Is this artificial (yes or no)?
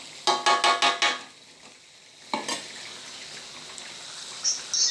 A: no